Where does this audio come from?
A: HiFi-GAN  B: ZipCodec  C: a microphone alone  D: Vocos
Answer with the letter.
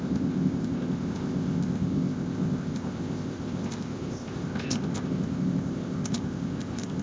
B